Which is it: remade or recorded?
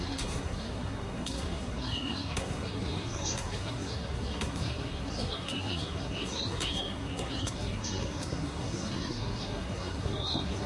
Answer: remade